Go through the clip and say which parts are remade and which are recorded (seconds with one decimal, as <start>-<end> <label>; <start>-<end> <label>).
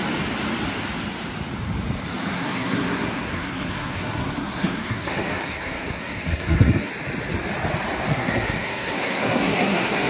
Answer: 0.0-2.3 recorded; 2.3-6.9 remade; 6.9-8.1 recorded; 8.1-10.1 remade